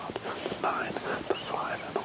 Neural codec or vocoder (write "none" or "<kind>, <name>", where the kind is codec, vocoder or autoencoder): none